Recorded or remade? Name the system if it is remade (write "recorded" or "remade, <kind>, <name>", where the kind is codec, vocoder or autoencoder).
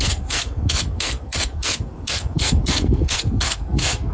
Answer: remade, codec, SNAC